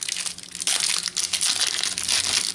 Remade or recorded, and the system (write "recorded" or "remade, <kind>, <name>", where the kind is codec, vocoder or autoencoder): recorded